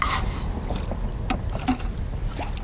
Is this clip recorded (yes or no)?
yes